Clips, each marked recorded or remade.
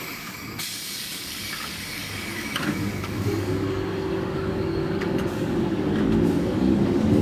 remade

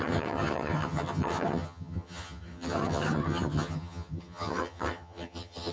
remade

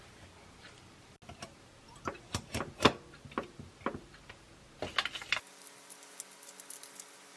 recorded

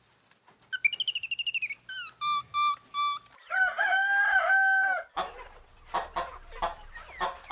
recorded